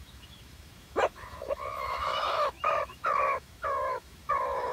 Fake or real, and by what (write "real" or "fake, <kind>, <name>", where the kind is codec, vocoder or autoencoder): fake, autoencoder, DAC-VAE